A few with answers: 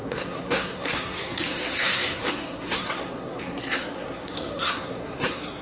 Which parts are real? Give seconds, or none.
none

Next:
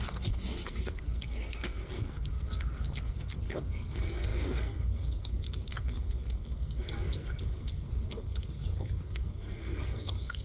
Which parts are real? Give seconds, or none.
none